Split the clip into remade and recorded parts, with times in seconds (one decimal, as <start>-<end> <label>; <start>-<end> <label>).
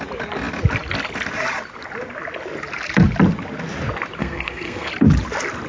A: 0.0-4.2 recorded; 4.2-4.9 remade; 4.9-5.7 recorded